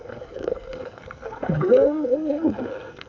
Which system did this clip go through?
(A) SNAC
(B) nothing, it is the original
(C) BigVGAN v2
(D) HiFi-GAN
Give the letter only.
A